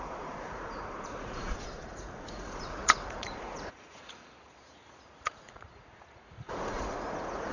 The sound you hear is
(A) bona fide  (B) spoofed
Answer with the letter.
B